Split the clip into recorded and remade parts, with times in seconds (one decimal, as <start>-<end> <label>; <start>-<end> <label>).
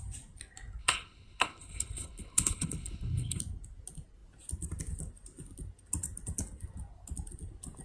0.0-0.8 recorded; 0.8-3.4 remade; 3.4-7.8 recorded